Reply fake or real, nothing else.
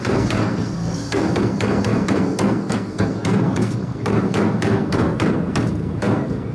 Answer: fake